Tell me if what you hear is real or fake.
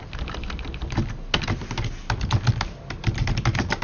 real